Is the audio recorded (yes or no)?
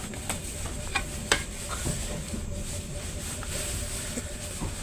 no